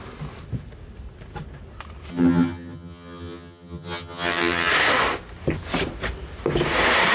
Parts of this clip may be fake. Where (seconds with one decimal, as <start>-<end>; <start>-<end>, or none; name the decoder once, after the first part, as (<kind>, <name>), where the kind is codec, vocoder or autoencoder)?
2.1-4.7 (vocoder, HiFi-GAN)